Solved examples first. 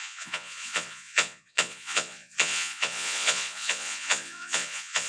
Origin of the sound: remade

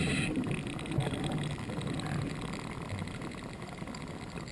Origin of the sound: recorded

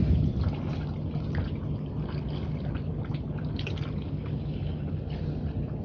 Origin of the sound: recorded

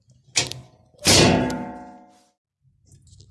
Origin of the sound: recorded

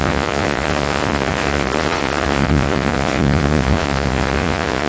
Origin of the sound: remade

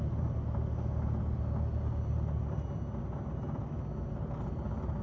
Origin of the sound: recorded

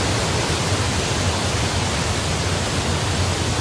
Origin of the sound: recorded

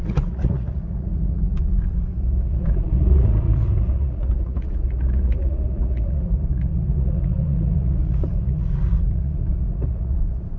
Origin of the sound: remade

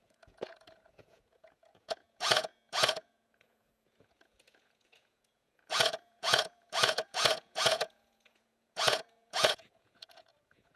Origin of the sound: remade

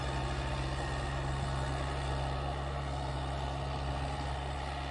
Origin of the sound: recorded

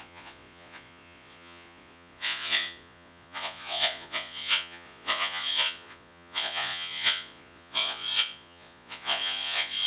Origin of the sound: remade